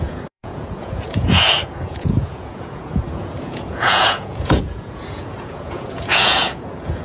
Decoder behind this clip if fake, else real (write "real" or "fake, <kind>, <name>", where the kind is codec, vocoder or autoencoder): fake, vocoder, Vocos